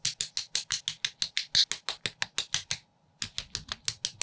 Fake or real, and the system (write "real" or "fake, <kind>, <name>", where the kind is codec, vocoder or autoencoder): real